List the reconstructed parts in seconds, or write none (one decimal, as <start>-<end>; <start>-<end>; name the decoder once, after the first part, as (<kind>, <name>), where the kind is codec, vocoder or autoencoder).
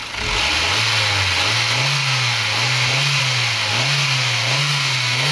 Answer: 4.6-5.3 (autoencoder, DAC-VAE)